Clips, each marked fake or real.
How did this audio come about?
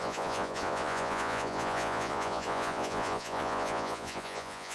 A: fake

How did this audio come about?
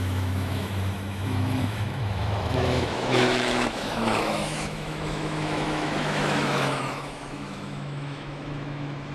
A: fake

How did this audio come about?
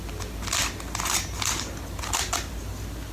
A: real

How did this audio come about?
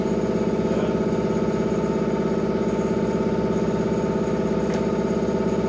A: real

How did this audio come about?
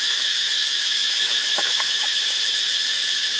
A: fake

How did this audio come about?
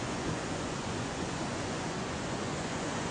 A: fake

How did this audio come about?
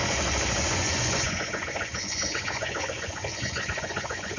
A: fake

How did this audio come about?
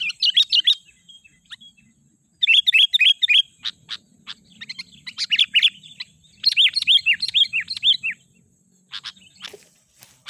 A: real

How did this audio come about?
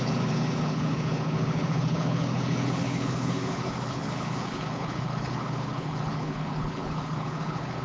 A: fake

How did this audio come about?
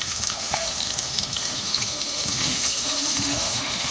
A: fake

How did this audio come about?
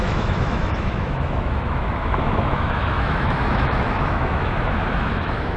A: fake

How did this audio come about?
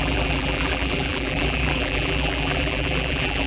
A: fake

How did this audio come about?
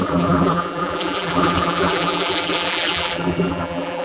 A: fake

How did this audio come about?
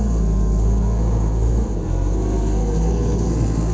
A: fake